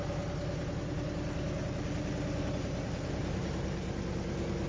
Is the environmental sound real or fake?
real